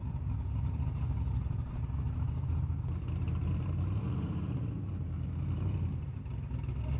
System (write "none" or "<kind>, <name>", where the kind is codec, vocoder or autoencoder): vocoder, BigVGAN v2